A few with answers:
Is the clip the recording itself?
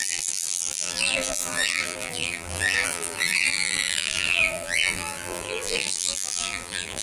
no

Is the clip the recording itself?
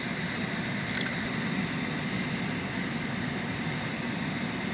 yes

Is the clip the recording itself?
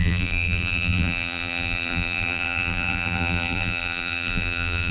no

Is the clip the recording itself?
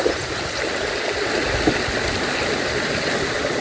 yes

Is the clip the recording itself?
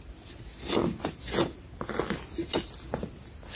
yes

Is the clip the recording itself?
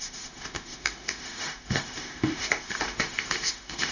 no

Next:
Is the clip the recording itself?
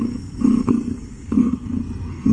no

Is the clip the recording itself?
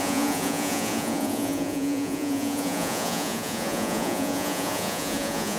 no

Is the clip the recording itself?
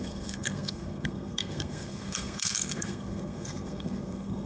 no